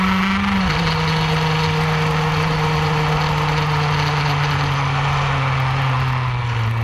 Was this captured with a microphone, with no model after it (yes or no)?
yes